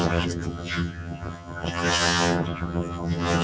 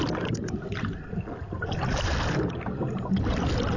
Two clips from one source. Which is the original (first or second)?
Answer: second